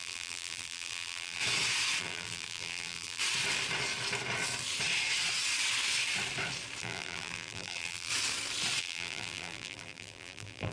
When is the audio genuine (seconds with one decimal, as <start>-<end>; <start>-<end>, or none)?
1.4-2.0; 3.2-6.8; 8.1-8.8